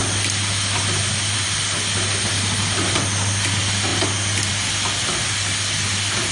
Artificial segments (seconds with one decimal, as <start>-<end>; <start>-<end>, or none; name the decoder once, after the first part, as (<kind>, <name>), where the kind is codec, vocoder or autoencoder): none